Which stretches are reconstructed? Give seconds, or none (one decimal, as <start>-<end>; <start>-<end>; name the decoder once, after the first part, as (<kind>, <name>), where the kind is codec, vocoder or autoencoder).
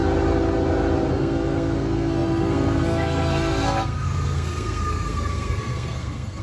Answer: 1.1-6.4 (codec, SNAC)